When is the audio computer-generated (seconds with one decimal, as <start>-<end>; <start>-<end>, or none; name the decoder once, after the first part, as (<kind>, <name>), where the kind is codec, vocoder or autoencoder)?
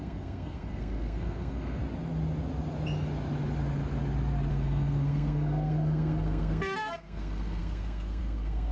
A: 0.0-1.8 (codec, SNAC); 4.5-8.7